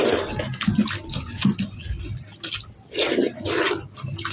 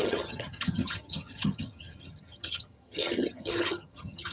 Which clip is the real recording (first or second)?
first